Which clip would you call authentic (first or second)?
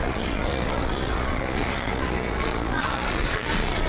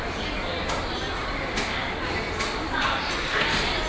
second